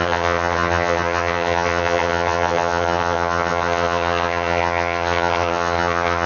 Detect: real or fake fake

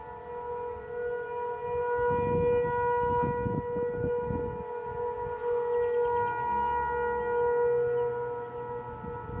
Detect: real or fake real